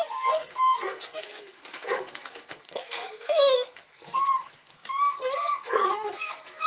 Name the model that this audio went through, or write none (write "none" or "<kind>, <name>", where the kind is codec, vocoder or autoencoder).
codec, SNAC